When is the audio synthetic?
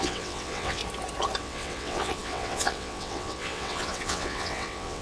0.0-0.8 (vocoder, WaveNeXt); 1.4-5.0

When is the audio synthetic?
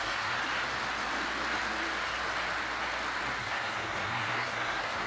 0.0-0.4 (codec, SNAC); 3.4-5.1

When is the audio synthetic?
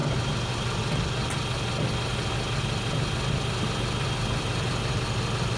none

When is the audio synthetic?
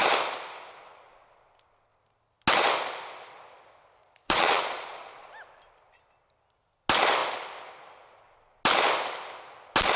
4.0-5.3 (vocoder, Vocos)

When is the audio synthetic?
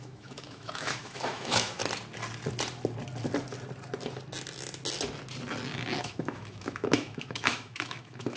0.0-1.8 (autoencoder, DAC-VAE); 6.0-8.4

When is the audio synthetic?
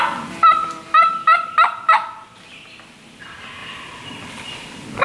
none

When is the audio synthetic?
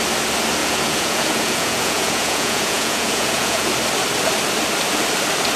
0.6-3.7 (vocoder, Vocos)